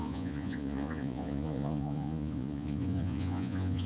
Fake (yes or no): yes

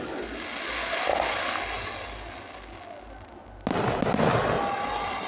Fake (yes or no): no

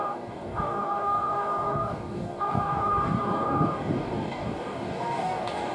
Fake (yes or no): yes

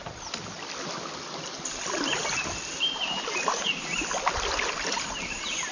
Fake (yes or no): no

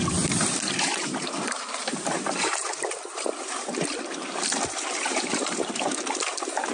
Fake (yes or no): yes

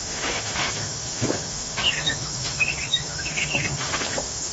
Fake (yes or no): yes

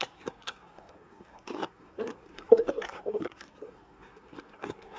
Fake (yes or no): yes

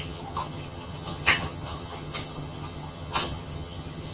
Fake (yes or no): yes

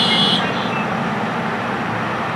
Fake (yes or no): no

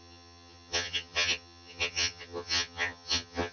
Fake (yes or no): yes